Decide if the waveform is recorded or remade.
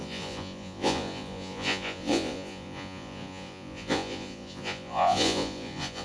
remade